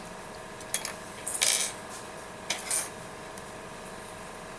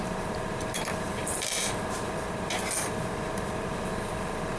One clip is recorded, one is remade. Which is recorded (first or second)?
first